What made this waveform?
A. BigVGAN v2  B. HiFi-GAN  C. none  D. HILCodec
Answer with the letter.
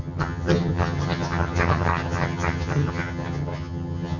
B